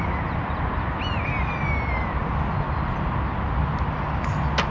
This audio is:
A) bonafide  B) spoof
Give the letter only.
A